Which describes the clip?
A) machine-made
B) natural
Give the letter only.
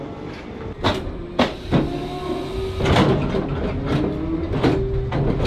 B